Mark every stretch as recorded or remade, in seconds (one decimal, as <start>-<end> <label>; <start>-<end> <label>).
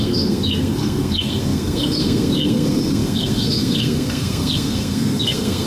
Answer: 0.0-5.7 remade